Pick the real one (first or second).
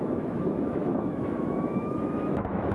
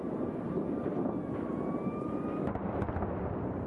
second